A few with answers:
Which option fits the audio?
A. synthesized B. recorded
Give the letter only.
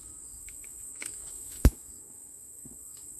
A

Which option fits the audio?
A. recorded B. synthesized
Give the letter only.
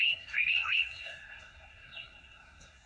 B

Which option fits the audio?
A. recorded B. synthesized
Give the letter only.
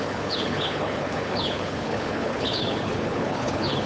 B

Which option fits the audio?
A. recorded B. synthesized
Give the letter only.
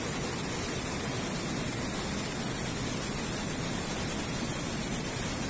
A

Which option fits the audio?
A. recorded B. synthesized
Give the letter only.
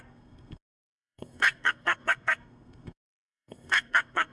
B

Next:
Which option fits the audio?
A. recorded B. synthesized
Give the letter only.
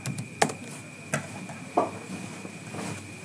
A